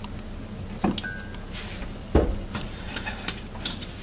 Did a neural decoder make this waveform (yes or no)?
no